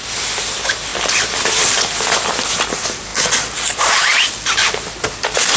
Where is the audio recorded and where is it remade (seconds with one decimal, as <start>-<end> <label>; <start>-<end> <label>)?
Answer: 0.0-5.6 recorded